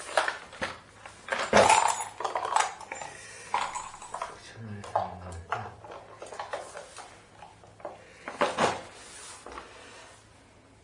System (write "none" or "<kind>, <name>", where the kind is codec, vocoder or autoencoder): none